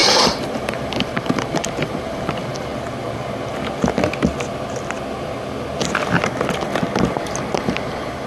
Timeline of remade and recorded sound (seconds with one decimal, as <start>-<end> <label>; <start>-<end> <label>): 0.0-2.7 remade; 2.7-7.6 recorded; 7.6-8.3 remade